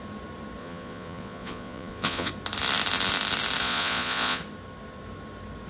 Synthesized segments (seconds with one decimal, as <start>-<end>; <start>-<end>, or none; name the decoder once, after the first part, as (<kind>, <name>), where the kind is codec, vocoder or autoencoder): 0.6-2.3 (vocoder, Vocos); 3.6-4.4